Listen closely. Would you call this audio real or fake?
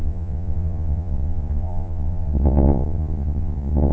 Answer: fake